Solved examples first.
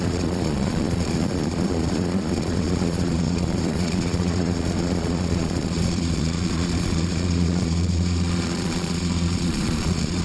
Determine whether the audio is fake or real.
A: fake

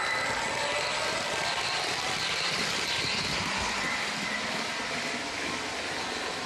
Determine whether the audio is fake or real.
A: real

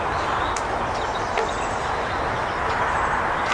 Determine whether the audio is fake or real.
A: real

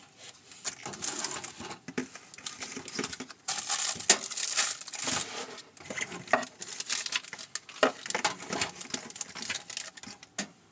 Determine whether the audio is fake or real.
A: real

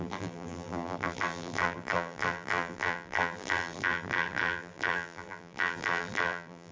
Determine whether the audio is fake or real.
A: fake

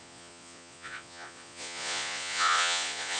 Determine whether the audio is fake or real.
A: fake